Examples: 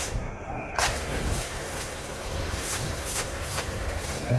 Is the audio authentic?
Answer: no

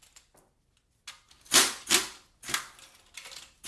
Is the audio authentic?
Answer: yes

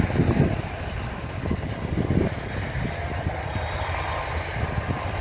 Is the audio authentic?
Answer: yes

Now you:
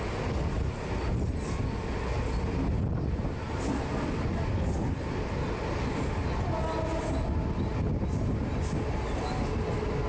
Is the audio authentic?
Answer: yes